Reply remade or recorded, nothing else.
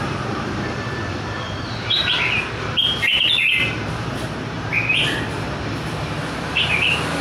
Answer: remade